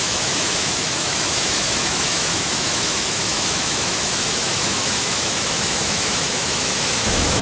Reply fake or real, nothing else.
fake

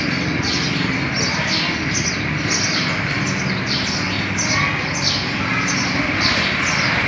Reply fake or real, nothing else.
real